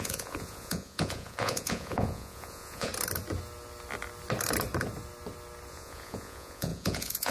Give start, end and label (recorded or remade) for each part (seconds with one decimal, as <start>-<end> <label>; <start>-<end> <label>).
0.0-2.9 remade; 2.9-5.7 recorded; 5.7-7.3 remade